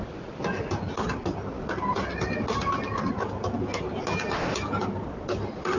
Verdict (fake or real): real